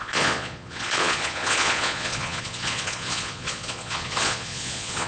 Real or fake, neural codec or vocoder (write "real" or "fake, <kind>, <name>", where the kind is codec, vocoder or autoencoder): fake, vocoder, Vocos